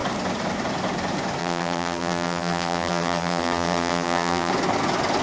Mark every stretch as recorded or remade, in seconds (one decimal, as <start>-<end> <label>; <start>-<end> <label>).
0.0-1.4 recorded; 1.4-4.5 remade; 4.5-5.2 recorded